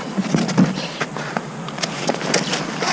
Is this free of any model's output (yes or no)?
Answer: yes